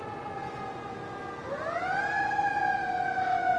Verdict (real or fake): real